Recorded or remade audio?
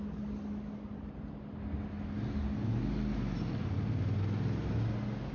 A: recorded